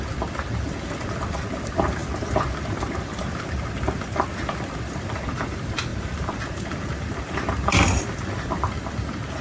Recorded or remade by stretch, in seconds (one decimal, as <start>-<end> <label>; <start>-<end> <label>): 0.0-9.4 recorded

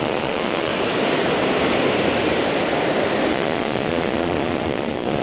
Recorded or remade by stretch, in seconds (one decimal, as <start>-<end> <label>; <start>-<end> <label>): 0.0-0.7 remade; 0.7-3.3 recorded; 3.3-5.2 remade

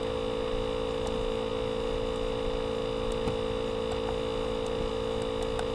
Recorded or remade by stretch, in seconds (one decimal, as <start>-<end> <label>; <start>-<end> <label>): 0.0-5.7 recorded

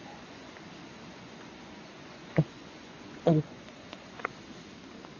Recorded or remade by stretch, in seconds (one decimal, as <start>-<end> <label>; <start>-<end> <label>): 0.0-0.5 remade; 0.5-1.1 recorded; 1.1-4.2 remade; 4.2-5.2 recorded

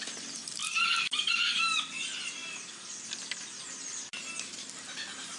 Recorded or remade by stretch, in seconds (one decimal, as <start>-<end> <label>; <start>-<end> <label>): 0.0-5.4 recorded

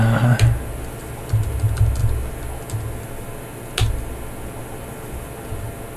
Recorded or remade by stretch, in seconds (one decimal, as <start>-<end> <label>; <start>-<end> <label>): 0.0-6.0 recorded

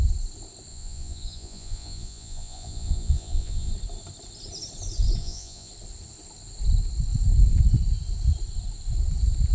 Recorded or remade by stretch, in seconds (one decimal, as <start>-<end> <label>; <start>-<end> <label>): 0.0-0.7 recorded; 0.7-3.7 remade; 3.7-5.2 recorded; 5.2-5.7 remade; 5.7-9.5 recorded